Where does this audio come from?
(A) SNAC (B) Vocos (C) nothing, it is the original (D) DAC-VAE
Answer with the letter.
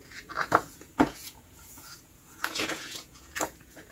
B